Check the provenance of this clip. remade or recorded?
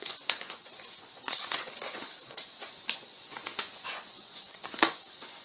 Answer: remade